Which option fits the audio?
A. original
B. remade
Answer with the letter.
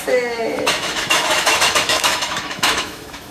B